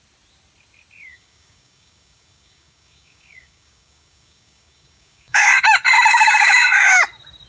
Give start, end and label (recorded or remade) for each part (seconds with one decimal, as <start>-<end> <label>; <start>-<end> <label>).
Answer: 0.0-1.1 recorded; 1.1-5.6 remade; 5.6-6.1 recorded; 6.1-7.0 remade; 7.0-7.5 recorded